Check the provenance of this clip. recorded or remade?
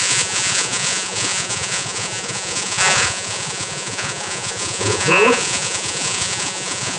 remade